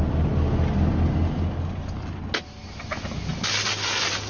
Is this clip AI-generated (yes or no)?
no